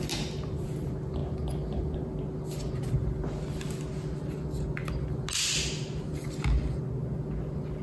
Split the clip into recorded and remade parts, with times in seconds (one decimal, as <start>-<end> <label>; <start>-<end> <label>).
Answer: 0.0-7.8 recorded

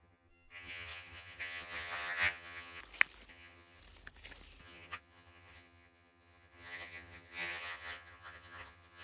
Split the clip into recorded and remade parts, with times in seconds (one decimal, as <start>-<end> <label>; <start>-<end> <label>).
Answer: 0.0-2.8 remade; 2.8-3.3 recorded; 3.3-3.8 remade; 3.8-4.6 recorded; 4.6-9.0 remade